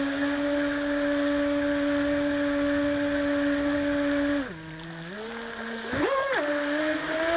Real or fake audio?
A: real